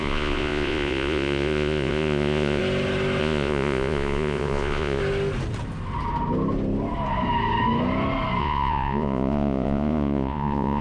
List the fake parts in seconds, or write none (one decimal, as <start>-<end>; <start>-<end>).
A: 0.0-2.6; 3.2-5.0; 8.4-10.8